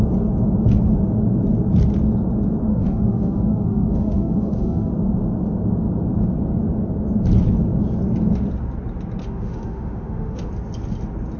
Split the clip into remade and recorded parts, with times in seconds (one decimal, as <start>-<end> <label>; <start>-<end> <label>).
0.0-2.7 recorded; 2.7-4.9 remade; 4.9-9.2 recorded; 9.2-10.5 remade; 10.5-11.4 recorded